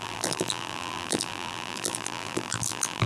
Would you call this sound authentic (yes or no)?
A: no